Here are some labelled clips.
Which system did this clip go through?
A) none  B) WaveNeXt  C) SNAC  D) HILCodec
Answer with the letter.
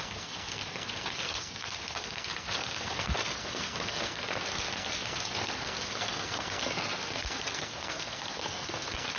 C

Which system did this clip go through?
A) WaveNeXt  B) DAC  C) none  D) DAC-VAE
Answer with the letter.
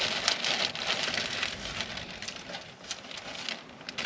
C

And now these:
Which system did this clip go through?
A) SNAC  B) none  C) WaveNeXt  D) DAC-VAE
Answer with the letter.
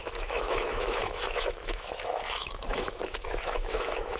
D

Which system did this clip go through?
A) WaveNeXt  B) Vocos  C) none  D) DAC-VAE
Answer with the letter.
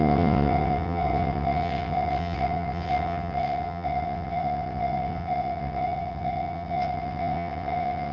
A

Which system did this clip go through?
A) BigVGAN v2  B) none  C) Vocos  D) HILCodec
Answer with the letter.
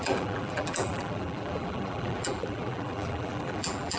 A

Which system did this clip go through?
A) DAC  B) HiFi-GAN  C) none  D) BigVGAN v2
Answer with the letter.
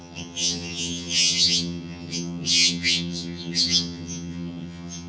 B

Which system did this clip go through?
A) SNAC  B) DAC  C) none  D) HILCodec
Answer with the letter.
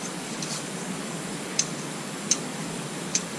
B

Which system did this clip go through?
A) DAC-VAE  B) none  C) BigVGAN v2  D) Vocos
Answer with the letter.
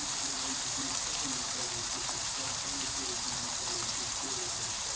C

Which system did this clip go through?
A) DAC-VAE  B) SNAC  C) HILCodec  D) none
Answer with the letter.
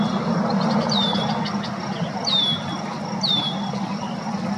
D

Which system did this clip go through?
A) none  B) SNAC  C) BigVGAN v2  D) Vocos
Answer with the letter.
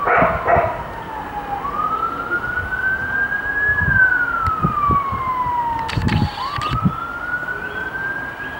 A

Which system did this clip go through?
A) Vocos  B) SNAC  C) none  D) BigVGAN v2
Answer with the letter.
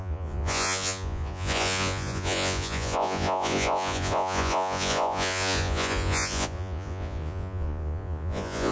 A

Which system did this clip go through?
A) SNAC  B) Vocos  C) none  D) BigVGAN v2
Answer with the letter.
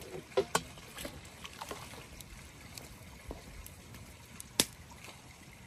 C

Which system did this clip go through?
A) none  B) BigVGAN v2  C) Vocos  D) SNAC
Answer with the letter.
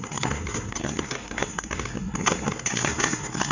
D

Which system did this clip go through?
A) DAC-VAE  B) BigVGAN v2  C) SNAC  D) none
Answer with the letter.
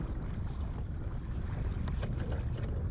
D